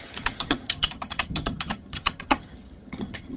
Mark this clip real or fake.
fake